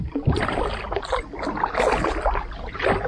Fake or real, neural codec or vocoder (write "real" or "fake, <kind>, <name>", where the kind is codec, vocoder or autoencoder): real